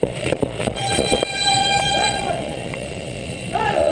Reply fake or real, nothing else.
fake